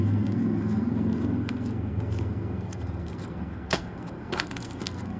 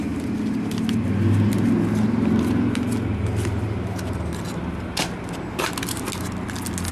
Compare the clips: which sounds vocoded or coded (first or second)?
first